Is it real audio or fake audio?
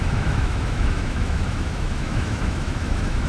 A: fake